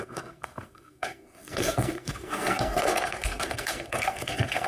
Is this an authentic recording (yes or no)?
no